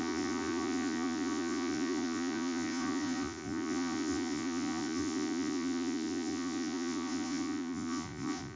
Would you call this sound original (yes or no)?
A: no